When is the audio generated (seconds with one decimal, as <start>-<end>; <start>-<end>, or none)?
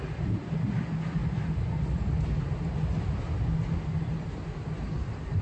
none